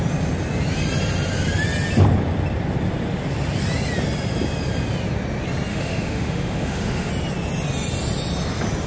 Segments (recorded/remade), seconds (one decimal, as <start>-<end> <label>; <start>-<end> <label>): 0.0-5.7 recorded; 5.7-7.1 remade; 7.1-8.9 recorded

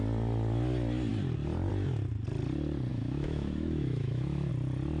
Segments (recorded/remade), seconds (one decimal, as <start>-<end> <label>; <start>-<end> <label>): 0.0-2.9 recorded; 2.9-4.5 remade; 4.5-5.0 recorded

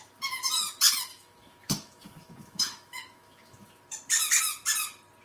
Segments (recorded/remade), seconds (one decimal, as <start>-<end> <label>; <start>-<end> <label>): 0.0-1.1 recorded; 1.1-3.8 remade; 3.8-5.2 recorded

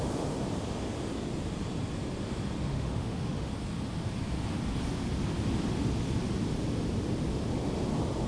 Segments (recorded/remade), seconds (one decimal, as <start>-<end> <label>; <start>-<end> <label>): 0.0-2.7 recorded; 2.7-3.5 remade; 3.5-8.3 recorded

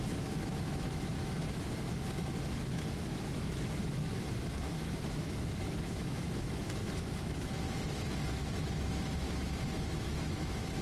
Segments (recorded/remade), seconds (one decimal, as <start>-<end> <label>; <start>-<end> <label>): 0.0-10.8 remade

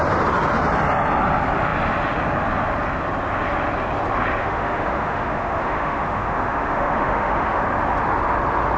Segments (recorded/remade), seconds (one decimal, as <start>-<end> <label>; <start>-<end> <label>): 0.0-4.4 recorded; 4.4-7.6 remade; 7.6-8.8 recorded

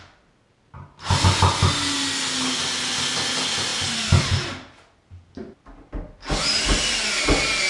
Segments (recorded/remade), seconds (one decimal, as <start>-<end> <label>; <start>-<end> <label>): 0.0-7.7 recorded

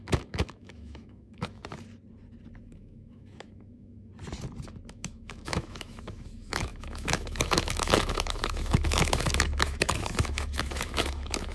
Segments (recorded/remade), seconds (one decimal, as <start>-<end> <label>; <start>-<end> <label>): 0.0-1.6 remade; 1.6-2.6 recorded; 2.6-4.1 remade; 4.1-4.9 recorded; 4.9-11.5 remade